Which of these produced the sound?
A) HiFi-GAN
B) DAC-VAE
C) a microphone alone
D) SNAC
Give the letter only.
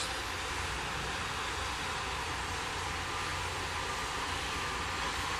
C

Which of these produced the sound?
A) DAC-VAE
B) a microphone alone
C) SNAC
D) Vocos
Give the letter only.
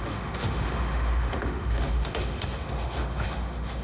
A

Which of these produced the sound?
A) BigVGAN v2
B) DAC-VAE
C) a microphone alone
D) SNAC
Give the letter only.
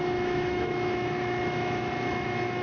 B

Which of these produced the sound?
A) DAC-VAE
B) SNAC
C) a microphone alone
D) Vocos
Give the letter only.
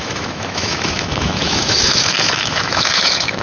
A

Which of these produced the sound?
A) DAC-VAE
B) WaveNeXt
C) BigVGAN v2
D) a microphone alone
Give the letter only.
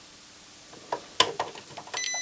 D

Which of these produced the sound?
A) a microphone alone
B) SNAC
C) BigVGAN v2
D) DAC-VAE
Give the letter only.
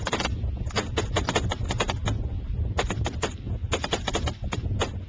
A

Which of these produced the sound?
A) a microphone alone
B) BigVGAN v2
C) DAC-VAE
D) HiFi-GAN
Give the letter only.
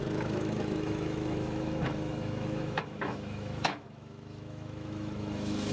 C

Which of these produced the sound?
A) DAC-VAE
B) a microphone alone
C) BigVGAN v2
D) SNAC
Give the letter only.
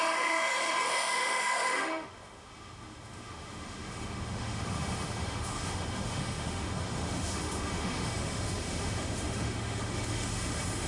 A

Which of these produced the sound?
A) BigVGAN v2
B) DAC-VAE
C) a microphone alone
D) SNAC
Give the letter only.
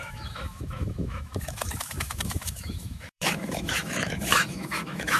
B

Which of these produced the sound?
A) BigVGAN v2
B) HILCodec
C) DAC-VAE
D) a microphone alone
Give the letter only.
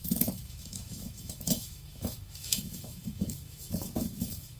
C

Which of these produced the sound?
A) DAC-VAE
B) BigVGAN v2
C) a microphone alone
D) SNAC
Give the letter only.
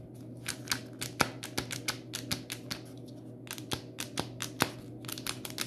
C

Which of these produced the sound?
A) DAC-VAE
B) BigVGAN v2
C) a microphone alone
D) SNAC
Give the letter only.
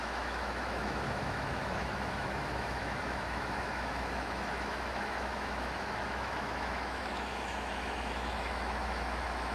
A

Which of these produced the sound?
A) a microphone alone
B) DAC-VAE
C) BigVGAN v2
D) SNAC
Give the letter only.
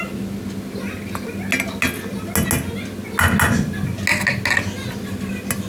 A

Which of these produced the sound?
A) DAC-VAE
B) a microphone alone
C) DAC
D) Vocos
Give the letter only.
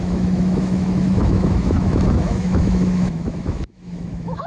A